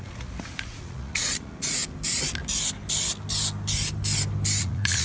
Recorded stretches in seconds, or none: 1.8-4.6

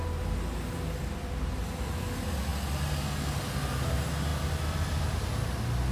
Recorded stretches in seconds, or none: 0.0-5.9

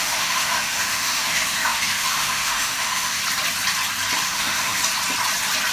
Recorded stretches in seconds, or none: 3.2-4.2; 4.8-5.7

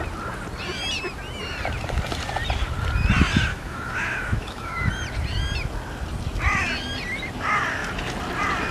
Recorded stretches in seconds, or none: 0.0-3.5; 4.9-8.7

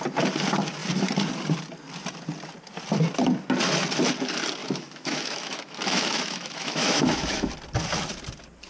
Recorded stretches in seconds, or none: 0.0-4.6; 7.5-8.7

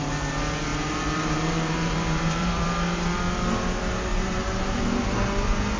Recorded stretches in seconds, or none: 0.0-0.7; 3.2-4.1